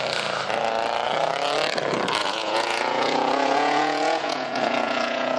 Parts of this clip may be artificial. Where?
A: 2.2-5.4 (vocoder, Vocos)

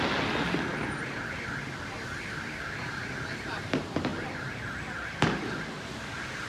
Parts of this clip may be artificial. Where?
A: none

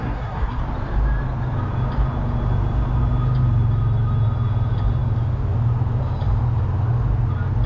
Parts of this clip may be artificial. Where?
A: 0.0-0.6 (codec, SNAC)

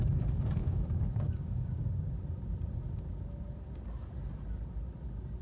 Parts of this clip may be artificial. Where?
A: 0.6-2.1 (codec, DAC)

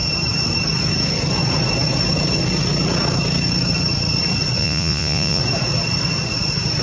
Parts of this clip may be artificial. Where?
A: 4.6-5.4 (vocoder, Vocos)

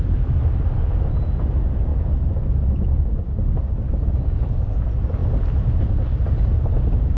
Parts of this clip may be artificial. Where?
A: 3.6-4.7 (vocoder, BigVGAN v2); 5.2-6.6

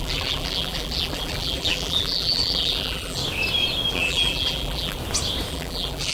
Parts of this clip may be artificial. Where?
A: 0.0-3.2 (vocoder, BigVGAN v2); 3.9-5.0; 5.5-6.1

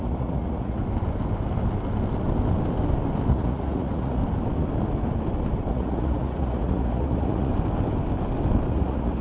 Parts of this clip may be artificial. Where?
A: 0.0-0.8 (vocoder, Vocos); 3.3-4.2; 5.7-7.5; 8.7-9.2